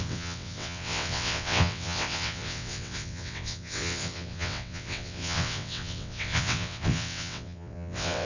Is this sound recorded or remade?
remade